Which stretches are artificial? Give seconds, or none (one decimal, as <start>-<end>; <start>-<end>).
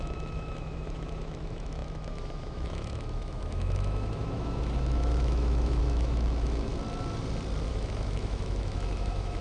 0.0-6.7; 7.7-9.4